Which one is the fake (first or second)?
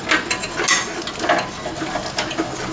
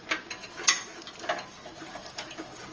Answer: second